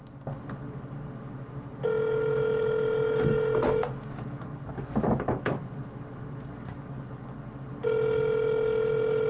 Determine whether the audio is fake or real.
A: real